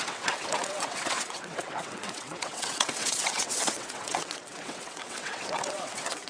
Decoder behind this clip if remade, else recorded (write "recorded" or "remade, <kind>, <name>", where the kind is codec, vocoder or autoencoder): remade, vocoder, WaveNeXt